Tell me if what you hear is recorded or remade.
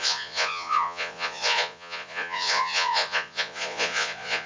remade